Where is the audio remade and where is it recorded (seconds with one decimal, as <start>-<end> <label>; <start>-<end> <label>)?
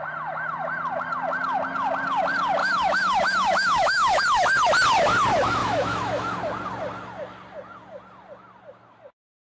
0.0-2.6 recorded; 2.6-4.2 remade; 4.2-5.6 recorded; 5.6-6.4 remade; 6.4-9.4 recorded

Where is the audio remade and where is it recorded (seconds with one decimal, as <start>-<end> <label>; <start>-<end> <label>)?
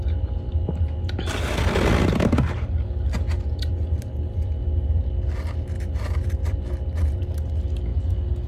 0.0-8.5 recorded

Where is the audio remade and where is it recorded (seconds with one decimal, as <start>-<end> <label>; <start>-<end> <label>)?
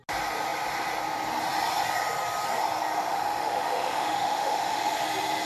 0.0-3.0 recorded; 3.0-5.0 remade; 5.0-5.4 recorded